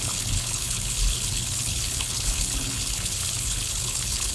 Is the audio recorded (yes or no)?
no